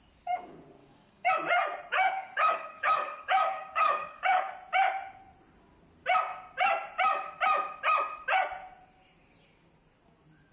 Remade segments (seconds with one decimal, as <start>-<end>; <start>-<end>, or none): 0.8-1.3; 1.9-4.5